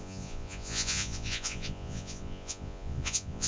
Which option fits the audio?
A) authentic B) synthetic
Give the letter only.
B